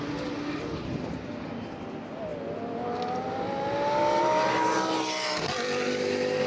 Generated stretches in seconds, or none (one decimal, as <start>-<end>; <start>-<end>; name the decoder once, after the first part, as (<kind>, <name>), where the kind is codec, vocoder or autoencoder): none